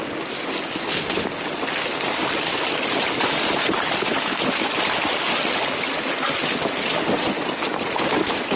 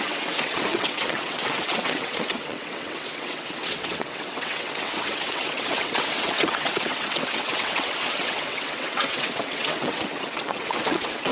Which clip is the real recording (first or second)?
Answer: first